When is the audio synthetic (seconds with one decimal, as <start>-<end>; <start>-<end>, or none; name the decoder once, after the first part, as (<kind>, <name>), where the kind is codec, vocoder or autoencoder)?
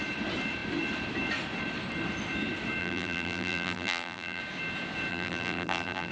2.8-4.4 (vocoder, BigVGAN v2); 5.1-6.1